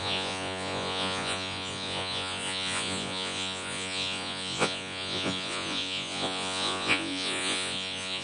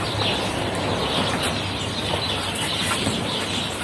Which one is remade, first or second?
first